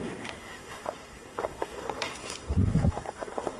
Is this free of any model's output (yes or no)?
no